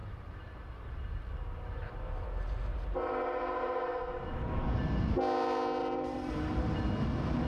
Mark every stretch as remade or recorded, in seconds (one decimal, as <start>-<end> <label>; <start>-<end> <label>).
0.0-0.7 remade; 0.7-2.7 recorded; 2.7-3.9 remade; 3.9-5.8 recorded; 5.8-6.3 remade; 6.3-7.5 recorded